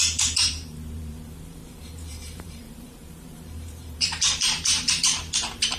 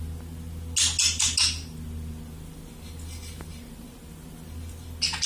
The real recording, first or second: second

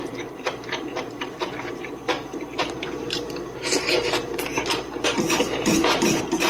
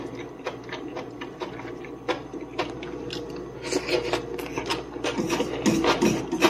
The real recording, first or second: second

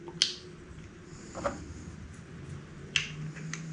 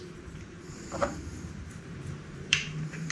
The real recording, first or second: first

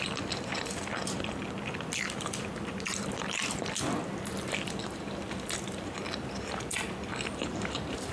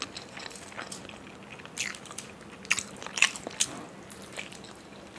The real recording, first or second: second